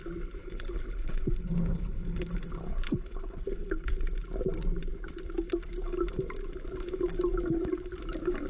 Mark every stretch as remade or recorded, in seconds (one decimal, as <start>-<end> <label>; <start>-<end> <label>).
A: 0.0-0.4 recorded; 0.4-3.9 remade; 3.9-8.5 recorded